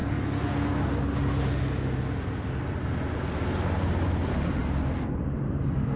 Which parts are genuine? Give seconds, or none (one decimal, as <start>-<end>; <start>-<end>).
0.0-3.6; 4.6-5.2

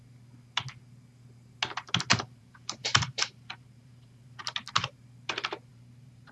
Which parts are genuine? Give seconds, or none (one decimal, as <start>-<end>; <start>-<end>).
0.0-2.1; 4.4-5.7